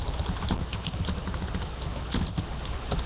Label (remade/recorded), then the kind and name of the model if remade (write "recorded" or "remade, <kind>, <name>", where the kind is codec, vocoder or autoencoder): recorded